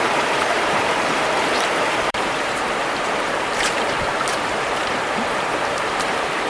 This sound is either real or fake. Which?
fake